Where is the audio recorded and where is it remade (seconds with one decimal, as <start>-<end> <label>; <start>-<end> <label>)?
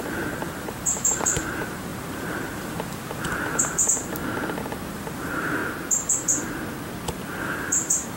0.0-4.2 remade; 4.2-4.9 recorded; 4.9-5.6 remade; 5.6-7.4 recorded; 7.4-8.2 remade